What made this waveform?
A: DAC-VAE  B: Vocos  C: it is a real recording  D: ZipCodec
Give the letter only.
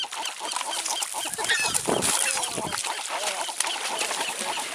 C